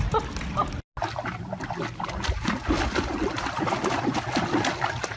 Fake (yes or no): no